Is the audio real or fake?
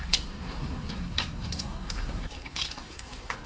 fake